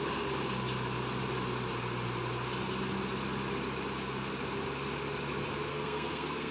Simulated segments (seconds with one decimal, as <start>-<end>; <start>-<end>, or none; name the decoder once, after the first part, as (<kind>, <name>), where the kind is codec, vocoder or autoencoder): 5.7-6.5 (codec, SNAC)